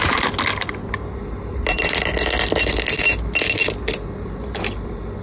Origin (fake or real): real